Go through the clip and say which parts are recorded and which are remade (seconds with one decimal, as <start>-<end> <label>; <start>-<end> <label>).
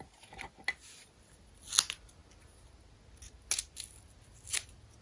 0.0-5.0 recorded